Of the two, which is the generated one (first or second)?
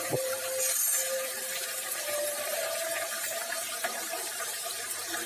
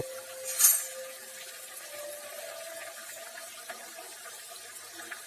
first